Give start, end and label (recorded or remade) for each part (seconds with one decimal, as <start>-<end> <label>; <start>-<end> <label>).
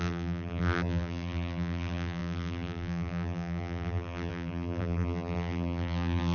0.0-6.3 remade